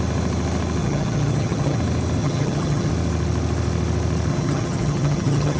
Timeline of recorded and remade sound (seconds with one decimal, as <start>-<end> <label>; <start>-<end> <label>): 0.0-0.8 recorded; 0.8-1.8 remade; 1.8-2.2 recorded; 2.2-2.9 remade; 2.9-4.3 recorded; 4.3-5.6 remade